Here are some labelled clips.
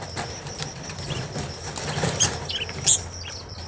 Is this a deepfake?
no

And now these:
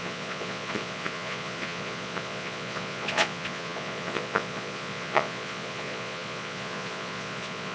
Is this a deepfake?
yes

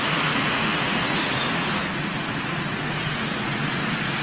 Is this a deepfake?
yes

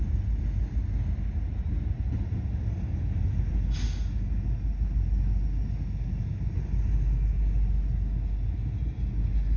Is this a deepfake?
no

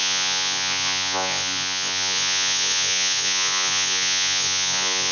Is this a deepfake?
yes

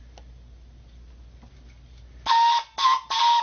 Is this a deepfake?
no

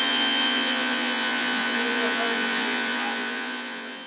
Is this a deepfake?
yes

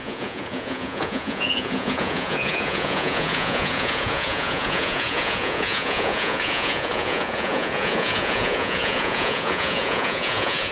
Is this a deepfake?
yes